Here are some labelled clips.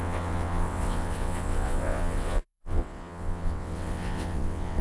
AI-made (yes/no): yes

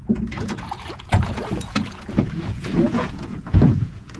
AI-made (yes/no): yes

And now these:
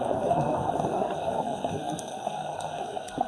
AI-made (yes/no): yes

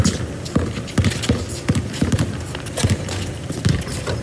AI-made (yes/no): yes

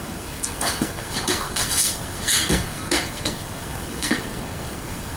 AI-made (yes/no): yes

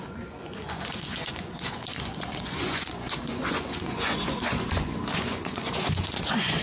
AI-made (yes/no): yes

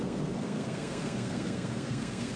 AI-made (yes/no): yes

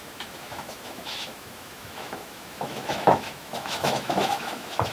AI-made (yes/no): yes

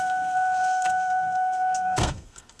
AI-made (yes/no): yes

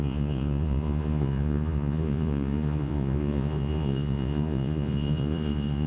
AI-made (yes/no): yes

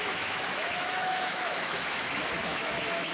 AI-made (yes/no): yes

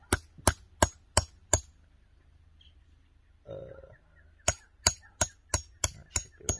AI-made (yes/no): no